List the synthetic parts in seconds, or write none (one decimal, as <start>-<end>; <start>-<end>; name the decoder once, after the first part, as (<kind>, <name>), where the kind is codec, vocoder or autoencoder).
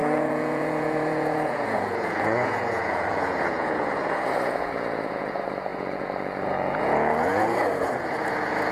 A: 0.0-8.7 (vocoder, Vocos)